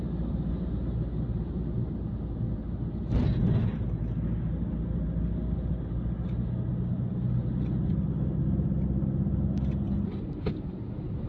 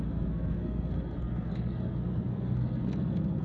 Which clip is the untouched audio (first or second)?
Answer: first